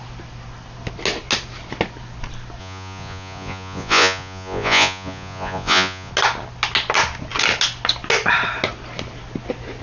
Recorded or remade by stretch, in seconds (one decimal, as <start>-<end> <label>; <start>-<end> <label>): 0.0-2.6 recorded; 2.6-6.1 remade; 6.1-9.8 recorded